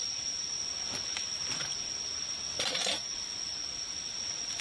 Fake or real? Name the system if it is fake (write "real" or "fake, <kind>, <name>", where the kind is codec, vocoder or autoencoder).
real